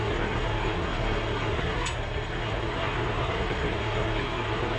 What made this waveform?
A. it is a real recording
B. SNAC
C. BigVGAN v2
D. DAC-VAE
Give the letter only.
B